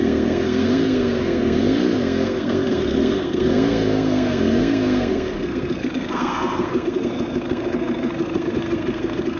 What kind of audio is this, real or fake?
fake